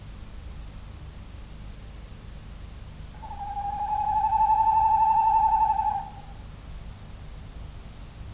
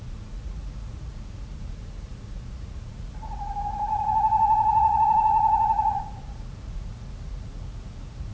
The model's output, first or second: second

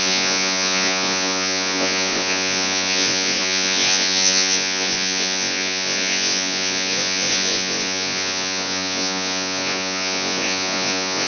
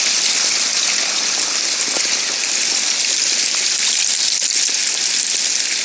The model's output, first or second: first